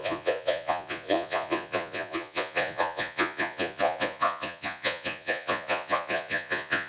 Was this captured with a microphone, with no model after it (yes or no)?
no